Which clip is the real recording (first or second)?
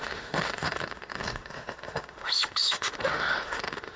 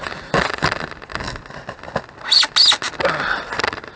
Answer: second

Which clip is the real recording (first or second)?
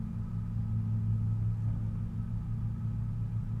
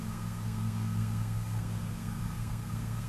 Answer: first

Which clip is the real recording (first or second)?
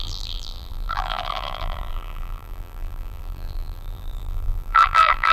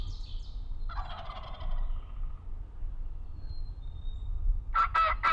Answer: second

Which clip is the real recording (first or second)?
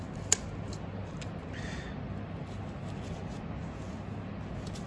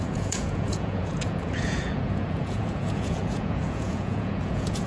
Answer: first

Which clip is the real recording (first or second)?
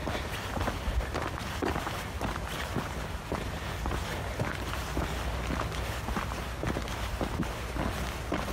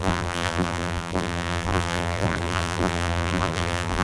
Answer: first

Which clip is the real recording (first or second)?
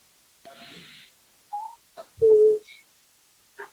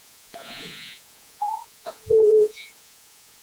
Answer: first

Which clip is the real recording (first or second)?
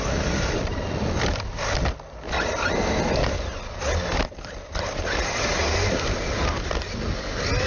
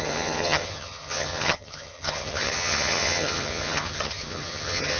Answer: first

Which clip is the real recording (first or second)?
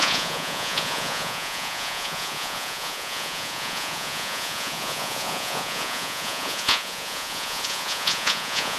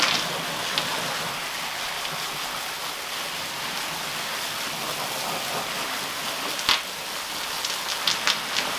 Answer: second